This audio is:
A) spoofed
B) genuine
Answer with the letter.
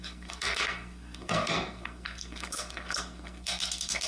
A